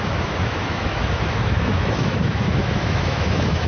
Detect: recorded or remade remade